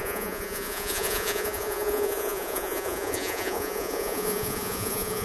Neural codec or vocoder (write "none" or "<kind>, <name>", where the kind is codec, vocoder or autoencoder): vocoder, Vocos